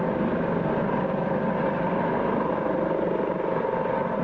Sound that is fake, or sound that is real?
real